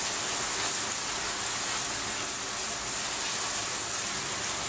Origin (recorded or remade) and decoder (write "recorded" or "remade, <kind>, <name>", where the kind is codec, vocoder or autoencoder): recorded